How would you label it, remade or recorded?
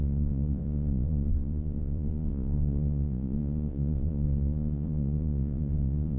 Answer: remade